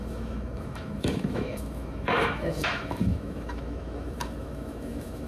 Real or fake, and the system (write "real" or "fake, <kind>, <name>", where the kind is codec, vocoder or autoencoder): fake, autoencoder, DAC-VAE